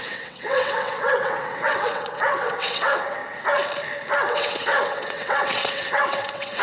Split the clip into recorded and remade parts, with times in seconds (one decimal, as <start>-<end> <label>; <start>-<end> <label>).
0.0-3.2 remade; 3.2-4.3 recorded; 4.3-6.6 remade